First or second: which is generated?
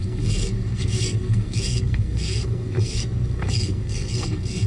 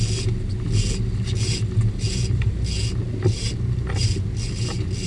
first